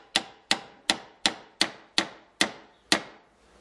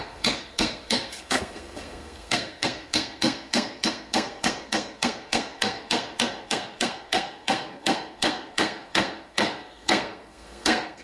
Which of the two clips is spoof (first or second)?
second